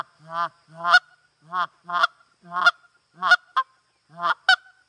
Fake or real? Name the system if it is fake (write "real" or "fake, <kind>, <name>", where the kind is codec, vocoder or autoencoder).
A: real